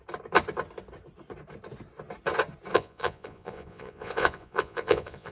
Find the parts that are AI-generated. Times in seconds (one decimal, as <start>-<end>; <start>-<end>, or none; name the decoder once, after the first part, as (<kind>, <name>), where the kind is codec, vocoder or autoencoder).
2.7-5.3 (vocoder, Vocos)